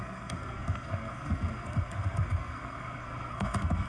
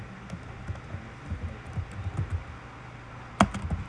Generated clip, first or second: first